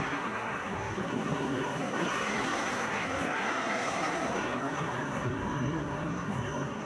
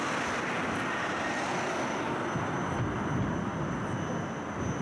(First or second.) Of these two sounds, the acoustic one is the second